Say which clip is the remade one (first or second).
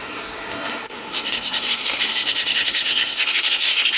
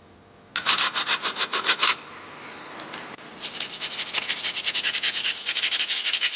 first